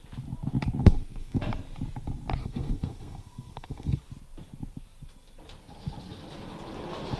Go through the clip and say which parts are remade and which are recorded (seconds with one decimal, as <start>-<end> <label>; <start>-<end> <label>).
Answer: 0.0-0.8 recorded; 0.8-1.4 remade; 1.4-2.4 recorded; 2.4-4.0 remade; 4.0-7.2 recorded

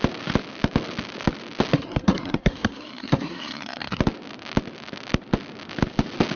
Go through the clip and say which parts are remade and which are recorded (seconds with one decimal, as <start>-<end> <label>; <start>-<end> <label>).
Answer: 0.0-1.7 recorded; 1.7-4.0 remade; 4.0-6.4 recorded

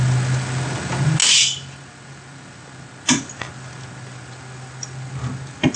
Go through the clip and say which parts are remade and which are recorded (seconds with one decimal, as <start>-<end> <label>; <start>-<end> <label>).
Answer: 0.0-5.8 recorded

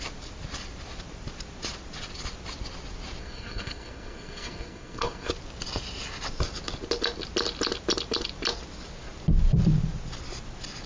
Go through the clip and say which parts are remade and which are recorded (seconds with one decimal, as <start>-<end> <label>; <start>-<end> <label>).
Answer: 0.0-3.2 recorded; 3.2-5.3 remade; 5.3-10.9 recorded